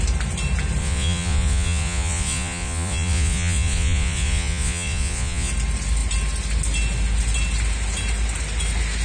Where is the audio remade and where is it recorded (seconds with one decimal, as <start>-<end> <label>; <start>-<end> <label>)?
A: 0.0-0.8 recorded; 0.8-5.5 remade; 5.5-9.0 recorded